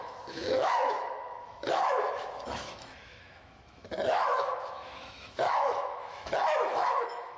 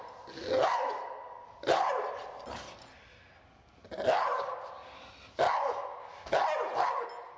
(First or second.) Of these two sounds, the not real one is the first